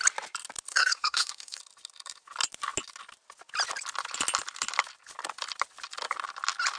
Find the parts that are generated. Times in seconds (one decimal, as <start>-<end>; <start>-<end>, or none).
0.7-1.6